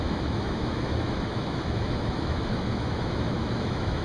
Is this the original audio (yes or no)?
no